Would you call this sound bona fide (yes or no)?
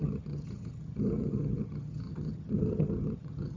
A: no